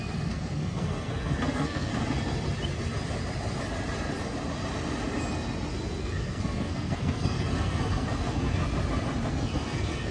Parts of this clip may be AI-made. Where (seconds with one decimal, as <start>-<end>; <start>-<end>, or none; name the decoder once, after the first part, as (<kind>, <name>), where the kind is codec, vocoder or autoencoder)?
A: 0.0-1.9 (codec, SNAC); 6.0-8.6; 9.3-10.1